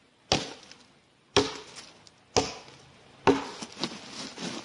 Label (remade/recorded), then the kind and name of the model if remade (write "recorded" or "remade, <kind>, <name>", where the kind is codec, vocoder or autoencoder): recorded